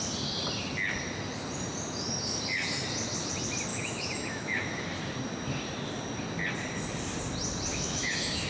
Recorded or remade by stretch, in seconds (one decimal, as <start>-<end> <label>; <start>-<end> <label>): 0.0-3.7 recorded; 3.7-5.0 remade; 5.0-7.7 recorded; 7.7-8.5 remade